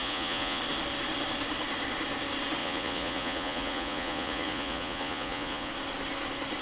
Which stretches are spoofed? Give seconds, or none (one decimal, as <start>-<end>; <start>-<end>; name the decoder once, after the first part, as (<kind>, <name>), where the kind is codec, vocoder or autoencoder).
0.0-0.6 (vocoder, Vocos); 2.6-5.7